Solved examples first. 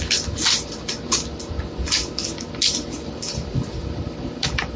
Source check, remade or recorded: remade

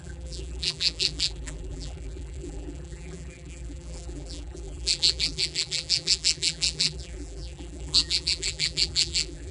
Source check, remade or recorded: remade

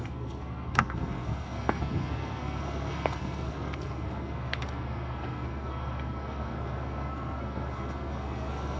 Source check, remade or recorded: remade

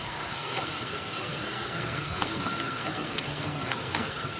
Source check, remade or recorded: remade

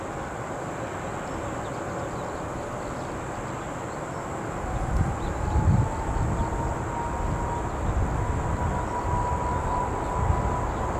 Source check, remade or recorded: recorded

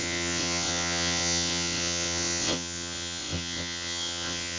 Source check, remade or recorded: remade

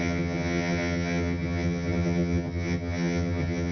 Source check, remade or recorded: remade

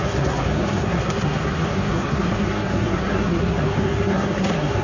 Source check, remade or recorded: remade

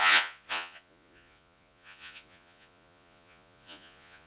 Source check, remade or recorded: remade